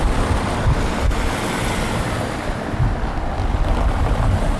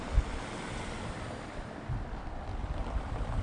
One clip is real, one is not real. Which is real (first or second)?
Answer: first